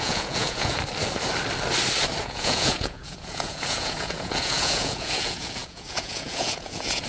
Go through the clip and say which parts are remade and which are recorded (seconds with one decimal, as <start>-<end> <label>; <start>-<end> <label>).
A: 0.0-0.8 remade; 0.8-2.2 recorded; 2.2-7.1 remade